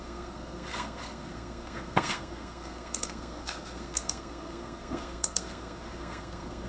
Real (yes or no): no